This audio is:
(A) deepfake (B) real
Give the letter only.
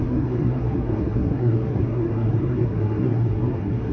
A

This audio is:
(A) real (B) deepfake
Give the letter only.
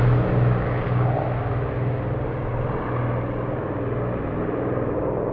A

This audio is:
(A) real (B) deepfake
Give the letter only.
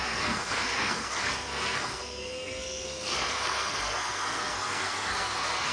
B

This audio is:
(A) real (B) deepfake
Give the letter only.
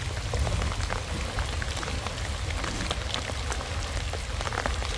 A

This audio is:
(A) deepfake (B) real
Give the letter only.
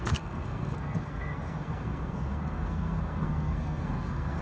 A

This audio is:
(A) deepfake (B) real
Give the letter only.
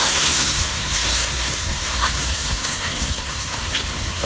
A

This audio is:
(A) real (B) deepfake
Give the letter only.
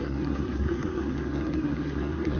B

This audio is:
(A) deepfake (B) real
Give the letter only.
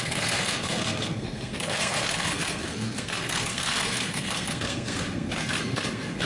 A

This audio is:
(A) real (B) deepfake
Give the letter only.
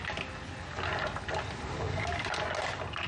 A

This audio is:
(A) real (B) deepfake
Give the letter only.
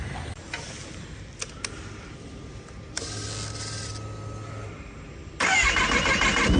A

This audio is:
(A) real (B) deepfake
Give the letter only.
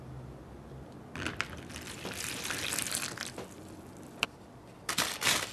A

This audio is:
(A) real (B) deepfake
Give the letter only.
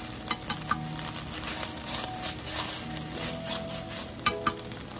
A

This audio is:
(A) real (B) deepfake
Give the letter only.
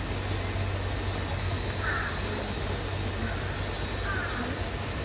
A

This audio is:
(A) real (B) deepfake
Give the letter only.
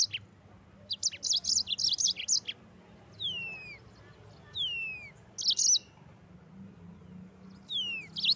A